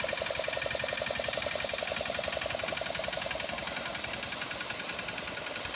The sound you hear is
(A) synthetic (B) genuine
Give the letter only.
B